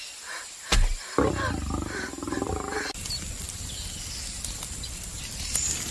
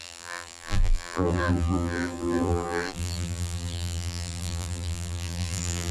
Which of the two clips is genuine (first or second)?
first